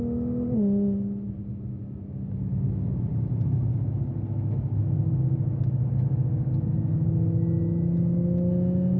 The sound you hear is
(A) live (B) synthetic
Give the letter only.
A